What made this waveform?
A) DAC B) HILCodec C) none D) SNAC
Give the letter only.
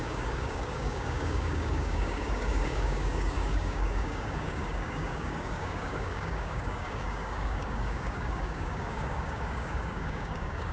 A